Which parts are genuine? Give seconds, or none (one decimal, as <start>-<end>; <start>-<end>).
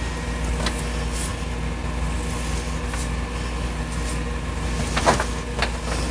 0.0-6.1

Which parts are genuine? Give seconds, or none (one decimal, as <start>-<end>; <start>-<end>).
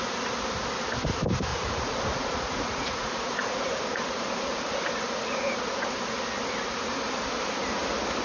0.0-1.5; 6.0-8.2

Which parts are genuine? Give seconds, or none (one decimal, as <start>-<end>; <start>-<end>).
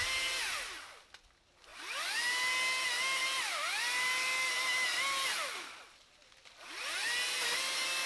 0.0-8.1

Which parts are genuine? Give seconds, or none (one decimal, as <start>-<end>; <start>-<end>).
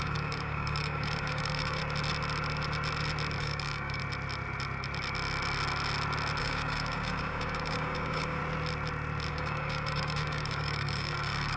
1.8-3.4; 4.0-6.4; 8.4-9.3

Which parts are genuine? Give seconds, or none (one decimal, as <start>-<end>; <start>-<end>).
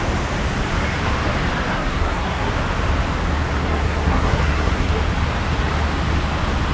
0.0-1.7; 2.5-3.5; 4.9-6.7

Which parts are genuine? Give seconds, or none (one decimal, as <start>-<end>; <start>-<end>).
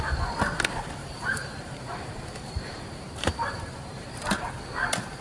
0.0-1.0; 3.9-5.2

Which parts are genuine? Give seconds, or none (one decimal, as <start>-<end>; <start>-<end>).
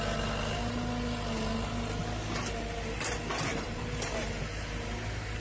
0.0-3.5; 4.4-5.4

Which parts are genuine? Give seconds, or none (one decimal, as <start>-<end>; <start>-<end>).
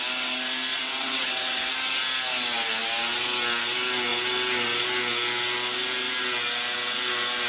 0.0-0.7; 1.7-7.5